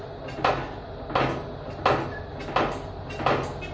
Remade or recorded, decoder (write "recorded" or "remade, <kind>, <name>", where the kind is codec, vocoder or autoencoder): recorded